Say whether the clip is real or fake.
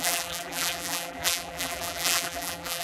fake